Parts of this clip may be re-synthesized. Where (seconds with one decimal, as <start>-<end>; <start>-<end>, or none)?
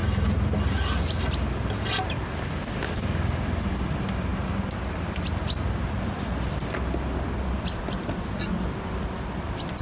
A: none